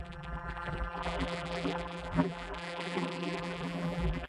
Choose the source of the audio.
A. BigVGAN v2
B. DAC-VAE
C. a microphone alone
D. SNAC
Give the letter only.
A